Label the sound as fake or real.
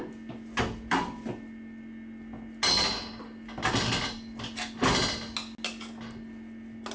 real